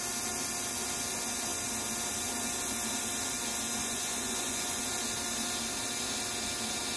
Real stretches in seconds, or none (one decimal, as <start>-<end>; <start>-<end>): 0.0-3.8; 4.8-7.0